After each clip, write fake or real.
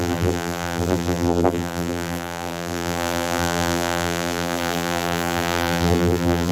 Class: fake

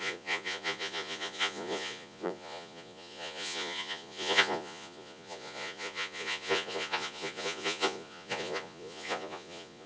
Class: fake